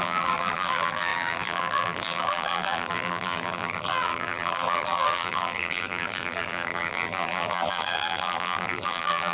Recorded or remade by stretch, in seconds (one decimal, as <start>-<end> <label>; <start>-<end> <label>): 0.0-9.3 remade